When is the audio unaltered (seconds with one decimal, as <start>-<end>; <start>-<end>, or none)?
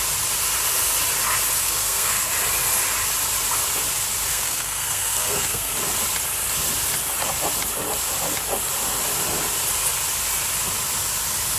0.0-1.6; 2.3-4.3; 5.7-11.6